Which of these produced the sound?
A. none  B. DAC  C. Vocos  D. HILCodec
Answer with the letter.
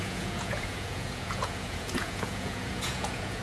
C